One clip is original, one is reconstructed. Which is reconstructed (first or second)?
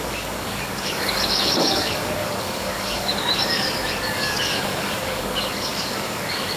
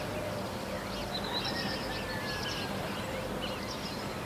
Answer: first